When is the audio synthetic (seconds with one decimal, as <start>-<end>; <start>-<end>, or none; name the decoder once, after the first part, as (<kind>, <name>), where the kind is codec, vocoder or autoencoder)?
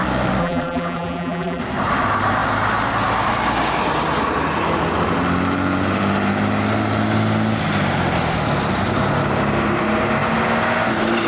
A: 0.4-1.6 (vocoder, BigVGAN v2)